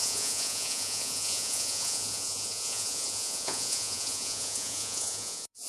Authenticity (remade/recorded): remade